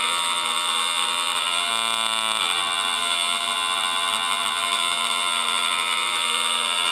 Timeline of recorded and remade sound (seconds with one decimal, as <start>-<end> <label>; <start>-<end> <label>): 0.0-1.7 remade; 1.7-2.4 recorded; 2.4-6.9 remade